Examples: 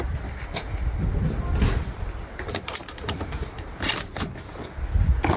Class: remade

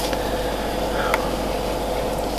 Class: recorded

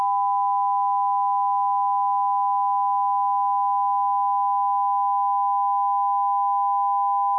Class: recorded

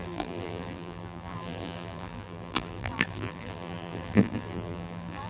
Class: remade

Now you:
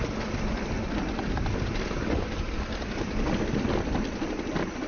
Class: remade